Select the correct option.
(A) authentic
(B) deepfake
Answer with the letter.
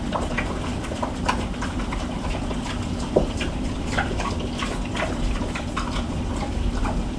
B